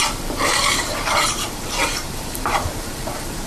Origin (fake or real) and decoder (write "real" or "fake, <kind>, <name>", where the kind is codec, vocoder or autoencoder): fake, vocoder, BigVGAN v2